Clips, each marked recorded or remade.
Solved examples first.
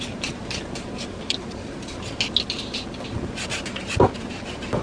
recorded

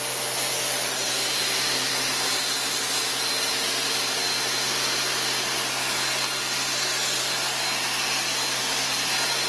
recorded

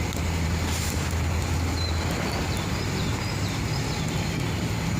recorded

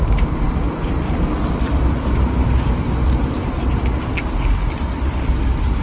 recorded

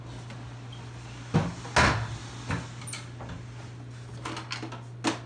recorded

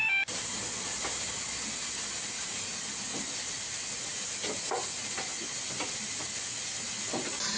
recorded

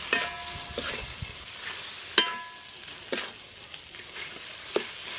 recorded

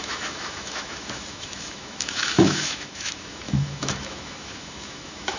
remade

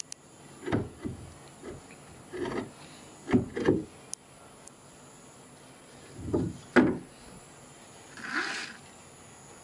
recorded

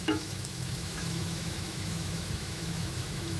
remade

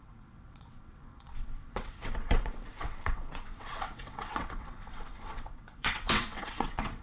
remade